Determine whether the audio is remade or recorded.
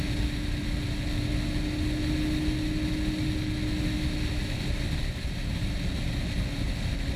recorded